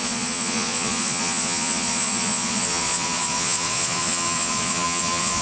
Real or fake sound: fake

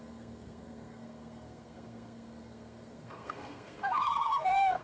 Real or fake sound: fake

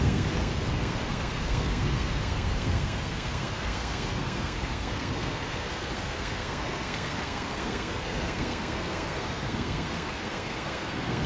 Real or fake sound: fake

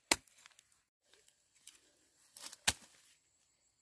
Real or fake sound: real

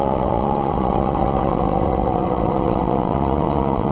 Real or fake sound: fake